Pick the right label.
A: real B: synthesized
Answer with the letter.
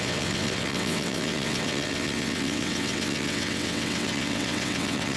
B